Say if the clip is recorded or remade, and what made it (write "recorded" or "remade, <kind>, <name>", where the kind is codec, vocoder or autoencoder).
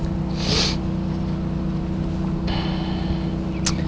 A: recorded